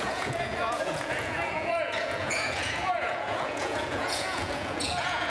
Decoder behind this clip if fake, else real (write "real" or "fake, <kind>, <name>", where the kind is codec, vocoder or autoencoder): fake, vocoder, Vocos